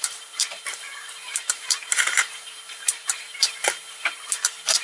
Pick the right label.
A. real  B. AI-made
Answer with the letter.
B